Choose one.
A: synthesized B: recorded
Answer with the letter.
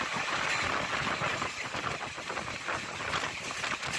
B